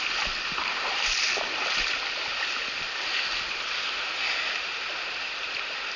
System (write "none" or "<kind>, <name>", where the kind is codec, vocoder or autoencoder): none